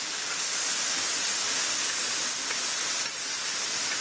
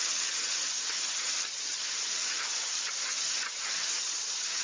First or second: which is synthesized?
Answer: second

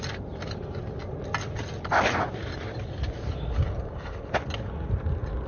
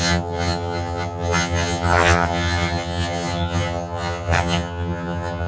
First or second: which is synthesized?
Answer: second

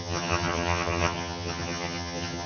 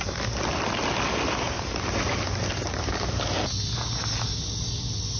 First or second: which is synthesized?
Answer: first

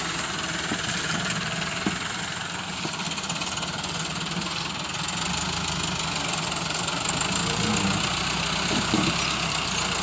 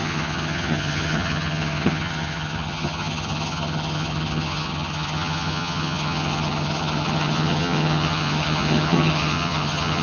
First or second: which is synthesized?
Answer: second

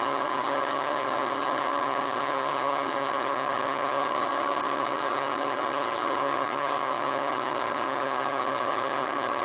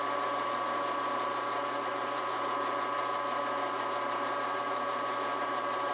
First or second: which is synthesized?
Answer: first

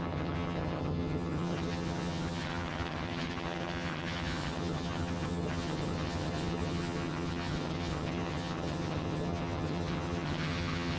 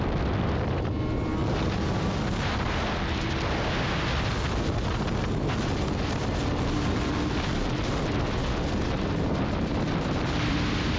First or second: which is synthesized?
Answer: first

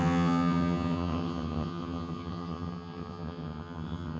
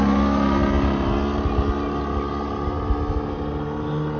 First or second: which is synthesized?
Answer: first